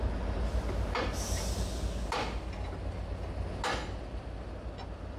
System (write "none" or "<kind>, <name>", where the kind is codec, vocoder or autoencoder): none